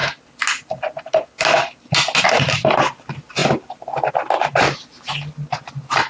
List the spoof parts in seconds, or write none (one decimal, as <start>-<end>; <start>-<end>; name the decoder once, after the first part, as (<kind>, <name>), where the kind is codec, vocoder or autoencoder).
none